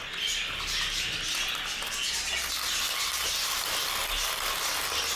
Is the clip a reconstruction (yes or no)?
no